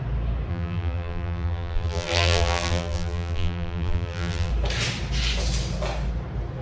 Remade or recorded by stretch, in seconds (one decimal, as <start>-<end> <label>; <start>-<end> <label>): 0.0-0.5 recorded; 0.5-4.5 remade; 4.5-6.6 recorded